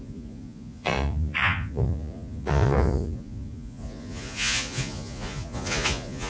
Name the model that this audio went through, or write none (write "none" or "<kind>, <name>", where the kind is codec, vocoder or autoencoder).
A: vocoder, Vocos